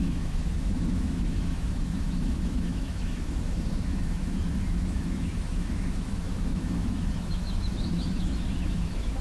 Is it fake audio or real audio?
fake